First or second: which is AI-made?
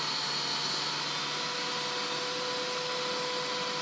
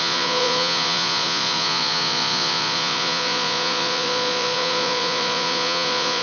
second